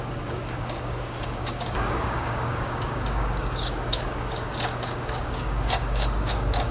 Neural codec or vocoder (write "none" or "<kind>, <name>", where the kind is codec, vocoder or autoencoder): codec, DAC